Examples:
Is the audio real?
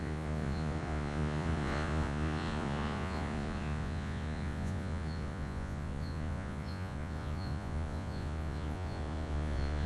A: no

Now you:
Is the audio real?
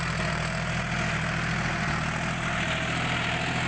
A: yes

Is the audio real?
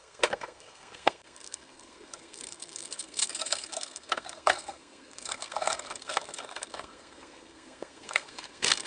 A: no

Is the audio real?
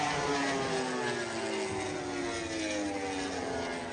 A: yes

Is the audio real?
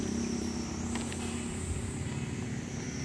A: yes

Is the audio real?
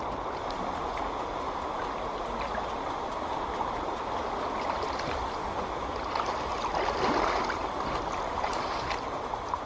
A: yes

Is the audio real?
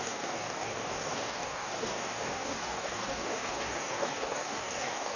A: no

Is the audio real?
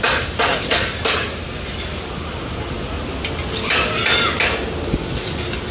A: yes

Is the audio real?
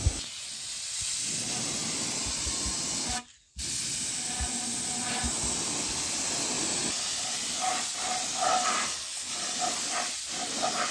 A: yes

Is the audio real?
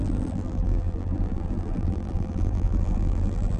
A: no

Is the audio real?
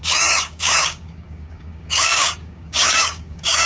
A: no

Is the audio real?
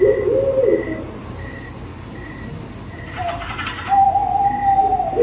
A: yes